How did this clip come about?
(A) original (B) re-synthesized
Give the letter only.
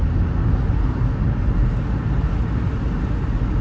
A